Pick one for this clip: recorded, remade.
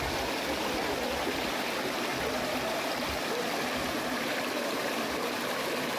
recorded